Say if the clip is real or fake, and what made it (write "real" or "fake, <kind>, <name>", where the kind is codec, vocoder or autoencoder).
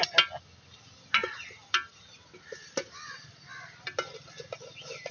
real